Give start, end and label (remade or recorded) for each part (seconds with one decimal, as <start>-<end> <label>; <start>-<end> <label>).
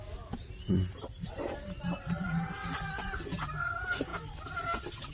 0.0-5.1 recorded